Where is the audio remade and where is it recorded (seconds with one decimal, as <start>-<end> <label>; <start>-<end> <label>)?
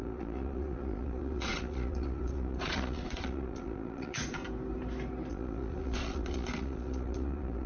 0.0-4.4 remade; 4.4-5.3 recorded; 5.3-7.7 remade